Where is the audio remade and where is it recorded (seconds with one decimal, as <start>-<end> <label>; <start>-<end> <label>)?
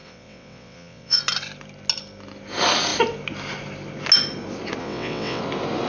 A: 0.0-1.2 remade; 1.2-4.8 recorded; 4.8-5.4 remade; 5.4-5.9 recorded